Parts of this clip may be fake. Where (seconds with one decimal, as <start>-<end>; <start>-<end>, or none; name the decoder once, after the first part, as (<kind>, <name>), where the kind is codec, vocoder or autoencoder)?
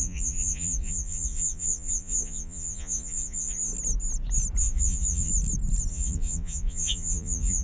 0.0-3.7 (vocoder, Vocos); 4.6-5.3; 5.9-7.6